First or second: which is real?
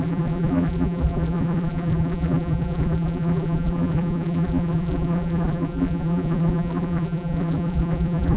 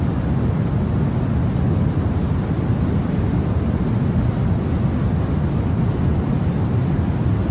second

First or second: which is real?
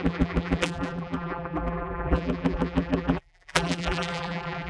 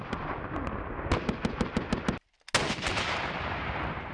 second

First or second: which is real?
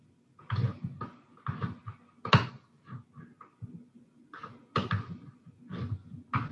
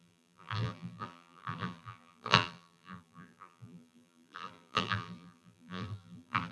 first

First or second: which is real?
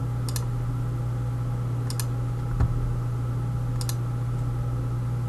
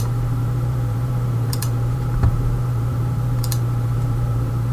first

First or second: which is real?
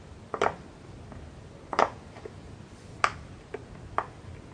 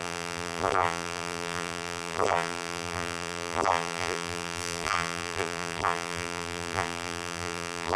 first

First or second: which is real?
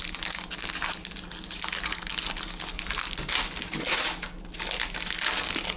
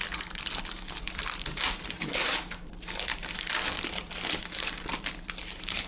first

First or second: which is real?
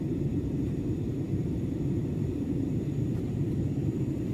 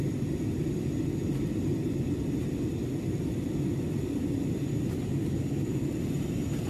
second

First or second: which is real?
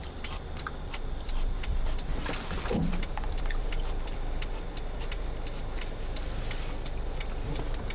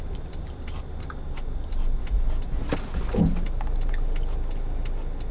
second